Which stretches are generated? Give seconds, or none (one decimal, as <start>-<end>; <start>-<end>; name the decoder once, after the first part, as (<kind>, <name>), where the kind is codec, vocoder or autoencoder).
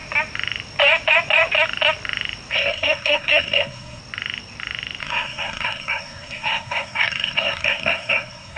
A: 2.5-4.0 (codec, SNAC); 5.0-8.6